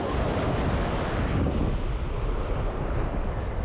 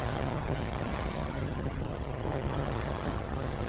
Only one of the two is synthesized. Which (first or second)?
second